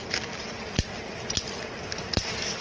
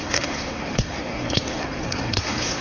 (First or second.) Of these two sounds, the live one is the first